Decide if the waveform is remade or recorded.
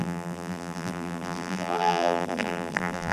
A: remade